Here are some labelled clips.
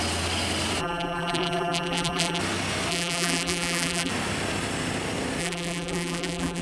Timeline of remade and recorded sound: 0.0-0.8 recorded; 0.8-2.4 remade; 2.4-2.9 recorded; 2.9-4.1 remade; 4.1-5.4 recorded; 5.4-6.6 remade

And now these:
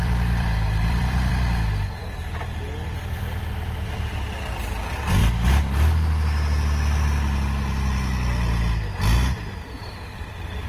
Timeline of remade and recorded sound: 0.0-1.3 remade; 1.3-10.7 recorded

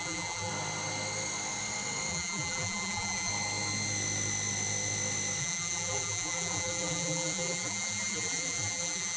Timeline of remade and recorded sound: 0.0-0.5 remade; 0.5-2.1 recorded; 2.1-3.3 remade; 3.3-5.4 recorded; 5.4-9.2 remade

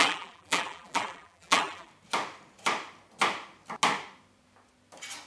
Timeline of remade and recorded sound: 0.0-1.9 remade; 1.9-5.3 recorded